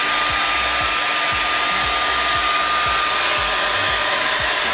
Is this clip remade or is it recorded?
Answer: recorded